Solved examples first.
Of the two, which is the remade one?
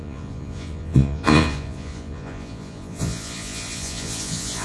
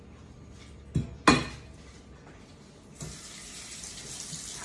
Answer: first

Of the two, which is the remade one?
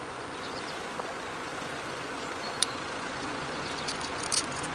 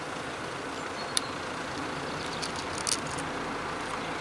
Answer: first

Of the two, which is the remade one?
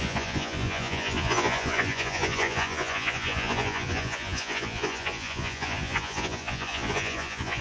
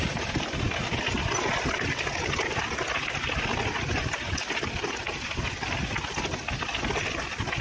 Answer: first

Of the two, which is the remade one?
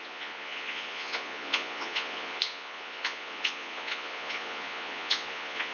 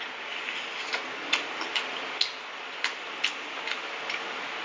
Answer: first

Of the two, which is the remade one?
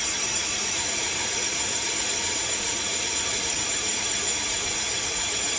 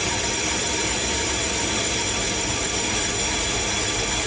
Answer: first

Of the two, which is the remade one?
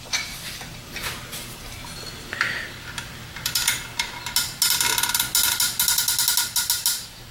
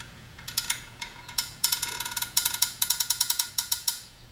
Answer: second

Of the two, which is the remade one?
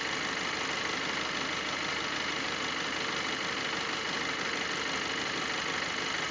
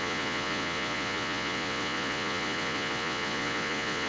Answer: second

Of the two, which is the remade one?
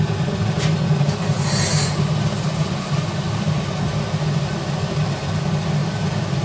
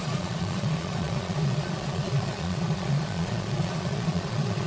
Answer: second